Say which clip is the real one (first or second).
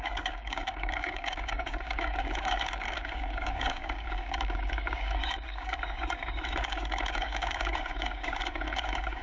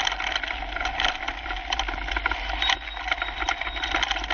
second